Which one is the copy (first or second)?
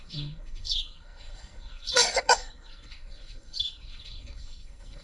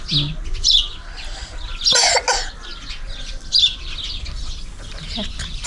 first